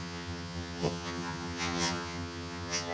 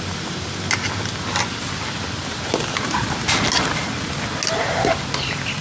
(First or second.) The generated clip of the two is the first